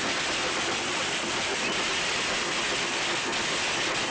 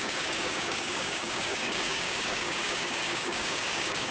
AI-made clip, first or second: second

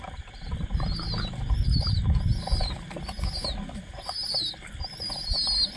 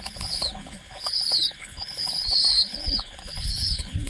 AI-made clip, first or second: second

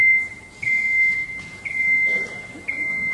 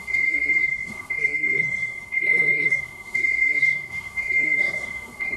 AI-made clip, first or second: second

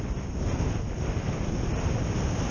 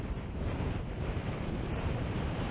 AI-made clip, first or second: second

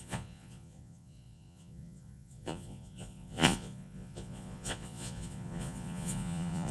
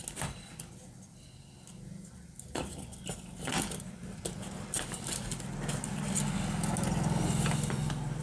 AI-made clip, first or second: first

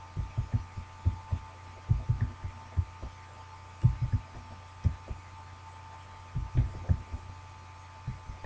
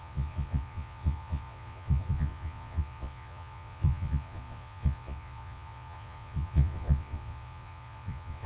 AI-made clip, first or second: second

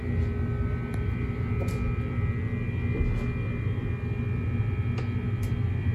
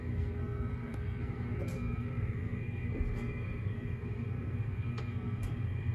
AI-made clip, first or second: second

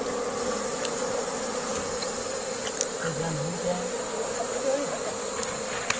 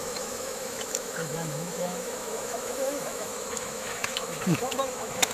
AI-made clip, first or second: second